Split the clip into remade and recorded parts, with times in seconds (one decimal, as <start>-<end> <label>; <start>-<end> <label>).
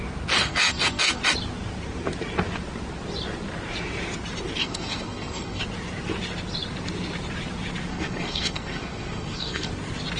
0.0-0.4 recorded; 0.4-1.2 remade; 1.2-4.6 recorded; 4.6-5.6 remade; 5.6-7.9 recorded; 7.9-9.7 remade; 9.7-10.2 recorded